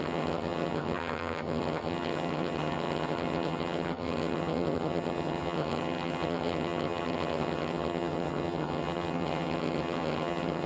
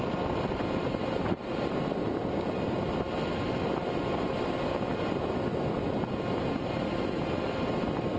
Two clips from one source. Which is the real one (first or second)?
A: second